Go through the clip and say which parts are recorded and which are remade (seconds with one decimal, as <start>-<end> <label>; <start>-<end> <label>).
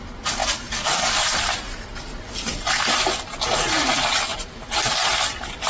0.0-0.4 remade; 0.4-3.6 recorded; 3.6-5.7 remade